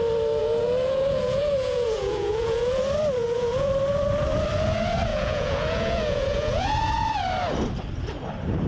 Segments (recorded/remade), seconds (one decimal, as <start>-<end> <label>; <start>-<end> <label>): 0.0-0.4 recorded; 0.4-2.8 remade; 2.8-3.2 recorded; 3.2-3.7 remade; 3.7-5.1 recorded; 5.1-6.7 remade; 6.7-8.7 recorded